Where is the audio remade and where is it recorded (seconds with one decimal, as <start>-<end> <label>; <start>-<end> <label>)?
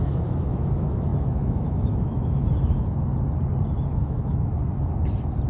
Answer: 0.0-3.1 remade; 3.1-3.9 recorded; 3.9-4.5 remade; 4.5-5.5 recorded